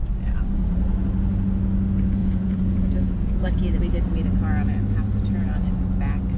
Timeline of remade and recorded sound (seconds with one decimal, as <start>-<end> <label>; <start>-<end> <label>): 0.0-2.2 recorded; 2.2-3.8 remade; 3.8-6.4 recorded